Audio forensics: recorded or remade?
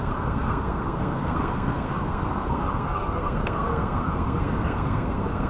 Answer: remade